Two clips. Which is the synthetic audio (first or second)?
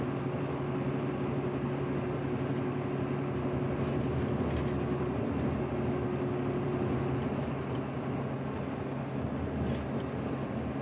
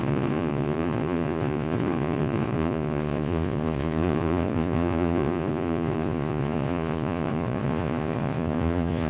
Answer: second